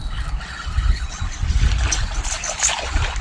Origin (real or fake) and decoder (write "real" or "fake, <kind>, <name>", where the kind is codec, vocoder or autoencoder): real